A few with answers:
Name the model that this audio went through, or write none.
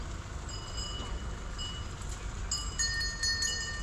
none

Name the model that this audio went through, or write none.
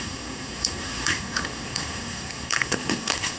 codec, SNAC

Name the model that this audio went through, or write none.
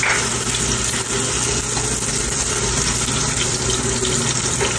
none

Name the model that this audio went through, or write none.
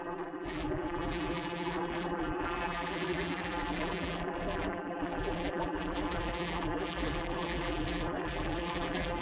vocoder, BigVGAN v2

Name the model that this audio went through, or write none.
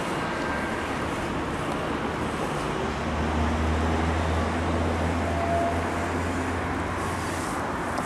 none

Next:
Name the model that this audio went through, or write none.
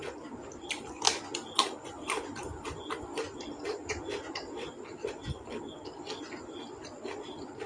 none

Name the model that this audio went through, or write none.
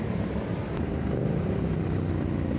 none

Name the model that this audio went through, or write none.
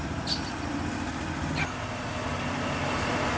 none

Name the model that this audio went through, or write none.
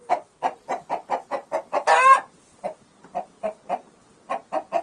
none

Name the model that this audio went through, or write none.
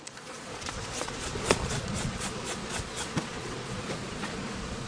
vocoder, Vocos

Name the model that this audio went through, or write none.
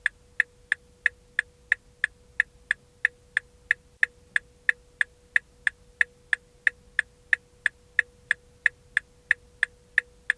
none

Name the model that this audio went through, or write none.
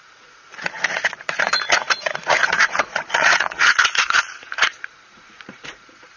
vocoder, Vocos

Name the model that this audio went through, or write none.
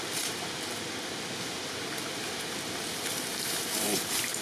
none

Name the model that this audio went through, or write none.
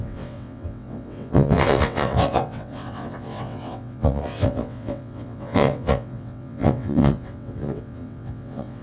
vocoder, WaveNeXt